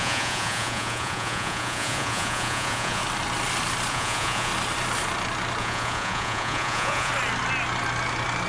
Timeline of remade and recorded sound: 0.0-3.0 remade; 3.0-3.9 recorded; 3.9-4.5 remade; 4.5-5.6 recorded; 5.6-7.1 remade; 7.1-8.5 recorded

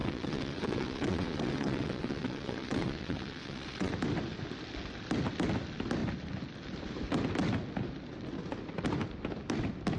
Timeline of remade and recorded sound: 0.0-3.9 remade; 3.9-10.0 recorded